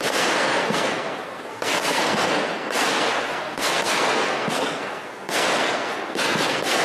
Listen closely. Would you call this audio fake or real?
fake